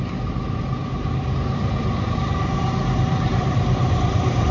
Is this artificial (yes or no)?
yes